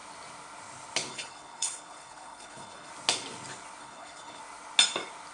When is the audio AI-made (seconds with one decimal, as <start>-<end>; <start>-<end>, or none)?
1.1-2.9; 3.8-4.4